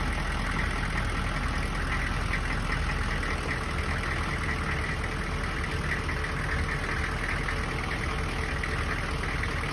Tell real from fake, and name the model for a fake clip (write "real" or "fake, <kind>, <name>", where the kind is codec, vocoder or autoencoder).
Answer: real